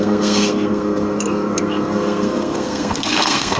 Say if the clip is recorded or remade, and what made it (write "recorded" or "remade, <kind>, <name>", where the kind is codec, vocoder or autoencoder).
remade, codec, SNAC